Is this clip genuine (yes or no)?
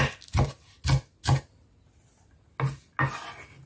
yes